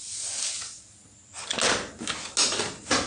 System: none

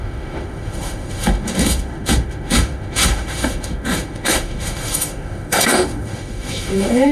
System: autoencoder, DAC-VAE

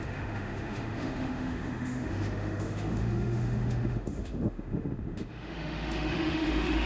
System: autoencoder, DAC-VAE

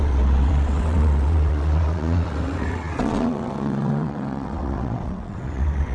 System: vocoder, WaveNeXt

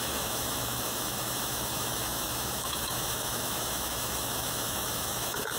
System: autoencoder, DAC-VAE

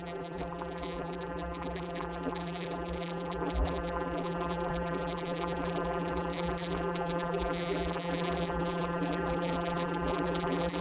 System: vocoder, BigVGAN v2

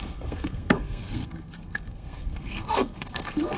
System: codec, SNAC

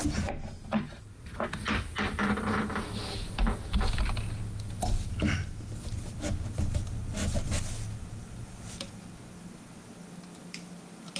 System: none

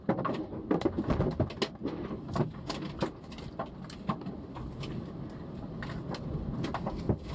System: none